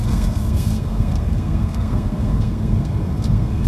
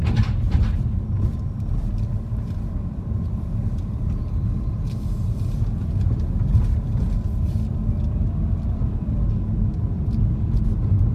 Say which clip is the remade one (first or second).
first